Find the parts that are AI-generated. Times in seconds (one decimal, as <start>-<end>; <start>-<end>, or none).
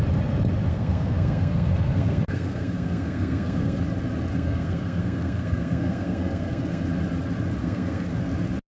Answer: 0.7-3.8; 4.3-6.8; 7.6-8.2